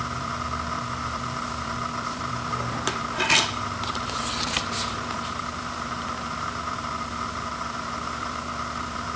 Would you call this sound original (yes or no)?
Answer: no